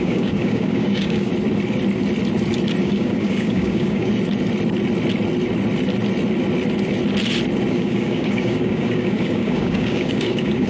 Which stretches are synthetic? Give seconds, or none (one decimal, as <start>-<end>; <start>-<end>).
0.0-1.3; 2.8-4.1; 7.7-10.7